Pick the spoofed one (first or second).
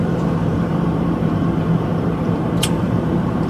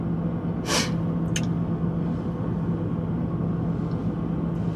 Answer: first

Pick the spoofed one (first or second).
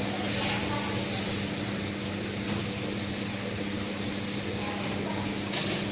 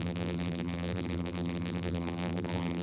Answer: second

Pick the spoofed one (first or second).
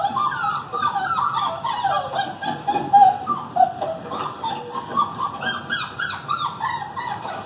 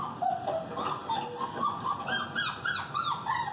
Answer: first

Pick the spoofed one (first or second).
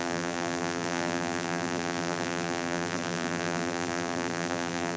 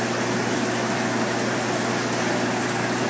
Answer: first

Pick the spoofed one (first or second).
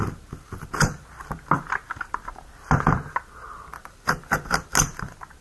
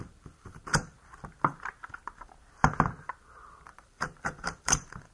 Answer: second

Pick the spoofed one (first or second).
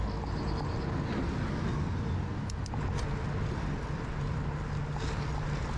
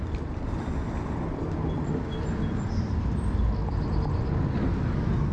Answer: second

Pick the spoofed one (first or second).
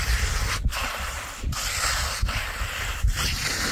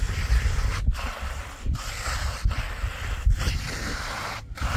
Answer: second